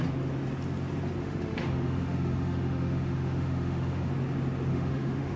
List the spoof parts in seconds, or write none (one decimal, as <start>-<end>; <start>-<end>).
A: 1.2-4.1; 4.7-5.4